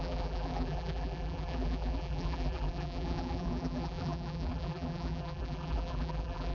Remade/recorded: remade